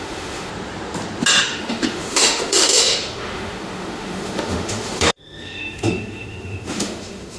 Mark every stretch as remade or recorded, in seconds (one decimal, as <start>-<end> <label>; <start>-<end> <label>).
0.0-0.5 remade; 0.5-1.4 recorded; 1.4-7.4 remade